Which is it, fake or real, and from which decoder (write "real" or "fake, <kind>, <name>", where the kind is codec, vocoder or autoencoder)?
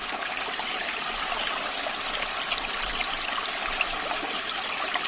real